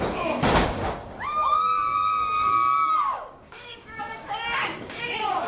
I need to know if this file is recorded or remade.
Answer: remade